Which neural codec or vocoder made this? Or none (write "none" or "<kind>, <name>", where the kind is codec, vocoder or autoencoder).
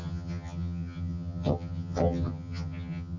vocoder, HiFi-GAN